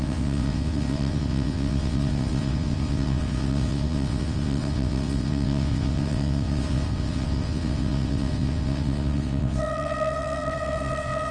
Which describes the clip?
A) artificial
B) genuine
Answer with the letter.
A